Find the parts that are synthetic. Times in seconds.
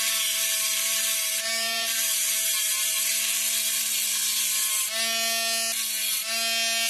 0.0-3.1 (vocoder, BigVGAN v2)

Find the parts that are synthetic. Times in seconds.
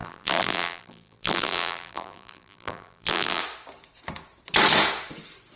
0.0-3.4 (vocoder, BigVGAN v2)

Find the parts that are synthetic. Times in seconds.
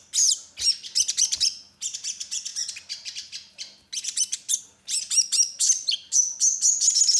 none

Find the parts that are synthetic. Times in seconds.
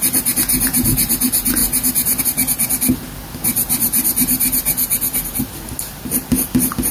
0.5-1.1 (vocoder, BigVGAN v2); 1.6-2.2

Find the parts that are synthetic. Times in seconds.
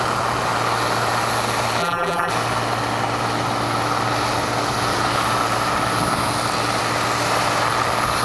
1.8-2.3 (vocoder, BigVGAN v2)